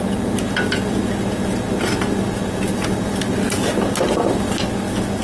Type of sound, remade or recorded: recorded